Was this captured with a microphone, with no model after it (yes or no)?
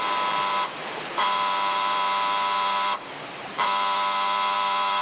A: no